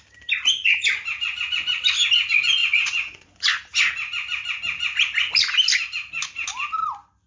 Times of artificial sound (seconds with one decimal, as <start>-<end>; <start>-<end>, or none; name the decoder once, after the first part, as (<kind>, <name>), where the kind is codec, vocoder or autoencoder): 2.6-3.4 (vocoder, Vocos)

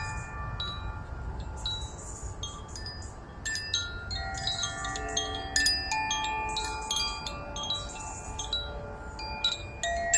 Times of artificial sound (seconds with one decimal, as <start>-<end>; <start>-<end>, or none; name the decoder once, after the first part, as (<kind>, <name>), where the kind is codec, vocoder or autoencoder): none

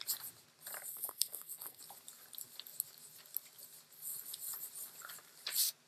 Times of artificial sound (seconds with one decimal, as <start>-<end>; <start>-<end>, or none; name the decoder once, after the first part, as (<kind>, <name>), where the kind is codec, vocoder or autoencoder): 0.9-1.8 (codec, SNAC)

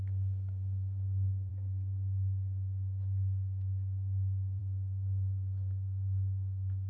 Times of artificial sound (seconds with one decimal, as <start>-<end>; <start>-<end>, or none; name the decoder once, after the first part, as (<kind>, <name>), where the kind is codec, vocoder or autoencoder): 0.0-1.5 (codec, SNAC); 4.6-6.9

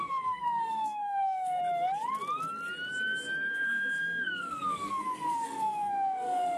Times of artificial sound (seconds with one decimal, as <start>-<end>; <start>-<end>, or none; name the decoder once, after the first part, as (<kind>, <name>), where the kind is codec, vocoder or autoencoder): 0.0-1.6 (codec, SNAC); 3.5-6.6

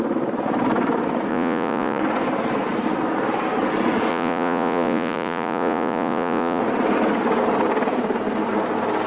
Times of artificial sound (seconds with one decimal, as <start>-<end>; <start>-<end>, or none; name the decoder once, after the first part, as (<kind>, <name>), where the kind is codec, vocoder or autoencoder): 1.3-2.0 (vocoder, Vocos); 4.1-6.6

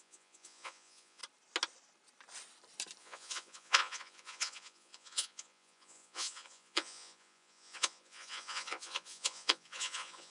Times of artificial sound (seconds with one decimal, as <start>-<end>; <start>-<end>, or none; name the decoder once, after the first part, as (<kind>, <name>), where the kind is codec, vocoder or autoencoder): 0.0-1.2 (vocoder, Vocos); 3.0-10.3